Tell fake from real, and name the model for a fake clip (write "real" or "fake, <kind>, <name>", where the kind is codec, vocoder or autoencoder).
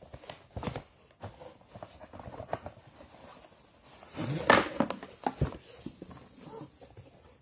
real